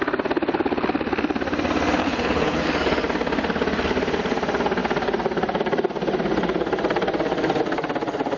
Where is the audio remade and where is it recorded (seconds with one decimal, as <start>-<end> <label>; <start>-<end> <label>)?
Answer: 0.0-2.0 recorded; 2.0-2.7 remade; 2.7-8.4 recorded